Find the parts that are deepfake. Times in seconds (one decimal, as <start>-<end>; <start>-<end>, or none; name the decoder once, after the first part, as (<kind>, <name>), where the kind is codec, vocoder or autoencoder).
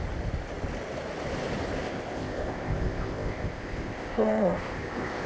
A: 1.8-5.3 (codec, ZipCodec)